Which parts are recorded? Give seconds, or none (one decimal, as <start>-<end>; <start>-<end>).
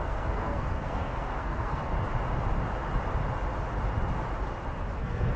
1.9-5.0